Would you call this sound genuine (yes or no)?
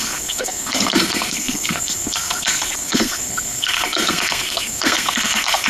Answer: no